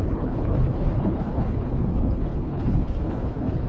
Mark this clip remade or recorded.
remade